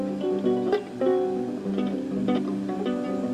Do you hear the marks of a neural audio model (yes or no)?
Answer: no